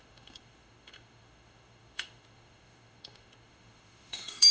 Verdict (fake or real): fake